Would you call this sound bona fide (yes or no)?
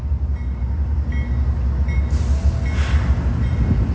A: yes